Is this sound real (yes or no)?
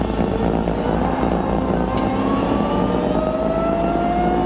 yes